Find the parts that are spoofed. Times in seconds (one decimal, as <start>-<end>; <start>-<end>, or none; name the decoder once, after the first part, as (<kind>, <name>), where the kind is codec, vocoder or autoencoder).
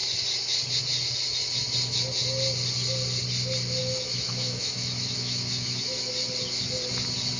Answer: 3.8-6.1 (autoencoder, DAC-VAE)